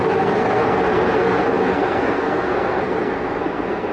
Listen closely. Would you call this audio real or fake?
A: fake